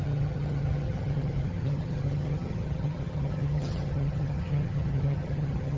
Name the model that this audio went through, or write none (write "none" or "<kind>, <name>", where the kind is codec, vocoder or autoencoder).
vocoder, HiFi-GAN